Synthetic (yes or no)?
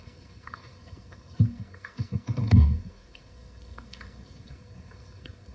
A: yes